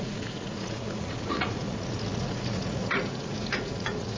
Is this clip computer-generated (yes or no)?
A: yes